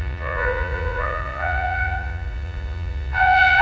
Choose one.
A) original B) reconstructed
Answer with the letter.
B